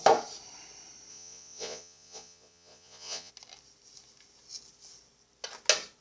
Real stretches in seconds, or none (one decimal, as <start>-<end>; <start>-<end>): 0.0-1.1; 3.3-6.0